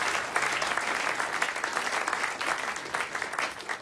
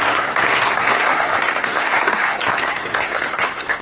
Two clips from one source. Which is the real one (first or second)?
first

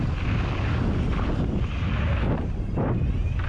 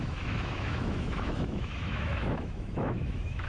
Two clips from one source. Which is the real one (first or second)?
first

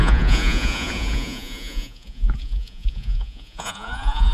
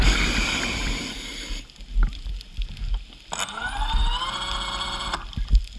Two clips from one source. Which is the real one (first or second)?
second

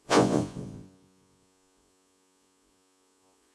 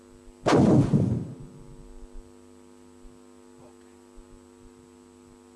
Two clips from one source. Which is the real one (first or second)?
second